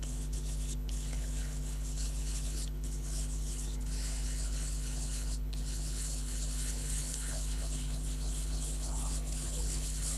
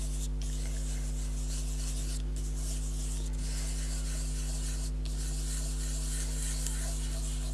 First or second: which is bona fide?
second